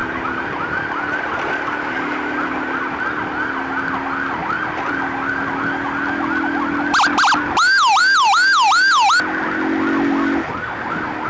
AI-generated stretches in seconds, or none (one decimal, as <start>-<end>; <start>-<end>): none